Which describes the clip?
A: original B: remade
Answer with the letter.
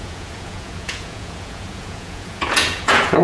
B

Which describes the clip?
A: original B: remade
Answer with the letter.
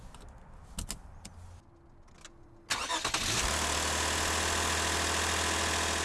A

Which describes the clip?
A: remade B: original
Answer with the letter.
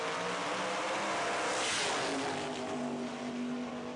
B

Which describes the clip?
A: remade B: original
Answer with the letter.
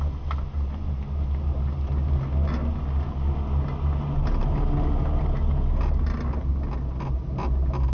B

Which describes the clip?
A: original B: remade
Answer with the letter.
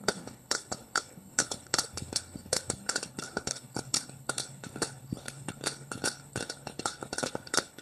B